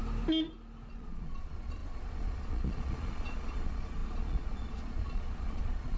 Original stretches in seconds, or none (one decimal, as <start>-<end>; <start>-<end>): 0.0-0.9